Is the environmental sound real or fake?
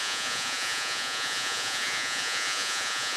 fake